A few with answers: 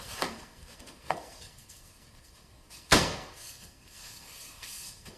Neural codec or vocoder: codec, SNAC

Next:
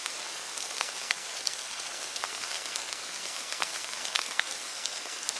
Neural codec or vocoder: codec, SNAC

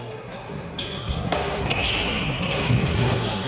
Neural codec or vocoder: codec, SNAC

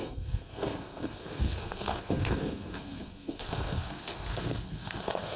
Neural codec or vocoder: codec, SNAC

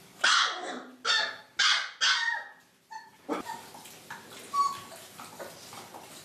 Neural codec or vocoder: none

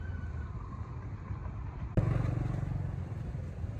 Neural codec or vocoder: none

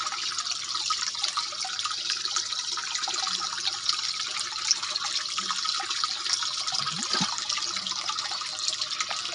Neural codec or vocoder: none